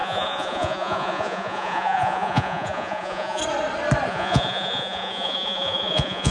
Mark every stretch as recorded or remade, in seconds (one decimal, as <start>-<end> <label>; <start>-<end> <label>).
0.0-3.4 remade; 3.4-4.1 recorded; 4.1-6.3 remade

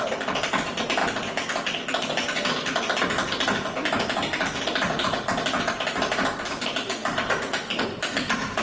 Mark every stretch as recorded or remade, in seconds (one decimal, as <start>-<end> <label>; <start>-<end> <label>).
0.0-8.6 recorded

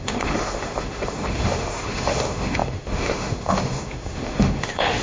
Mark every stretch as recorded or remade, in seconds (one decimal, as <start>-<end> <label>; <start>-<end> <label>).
0.0-5.0 remade